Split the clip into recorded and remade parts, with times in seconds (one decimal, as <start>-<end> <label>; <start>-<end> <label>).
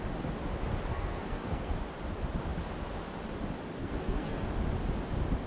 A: 0.0-0.9 recorded; 0.9-1.7 remade; 1.7-3.8 recorded; 3.8-4.5 remade; 4.5-5.5 recorded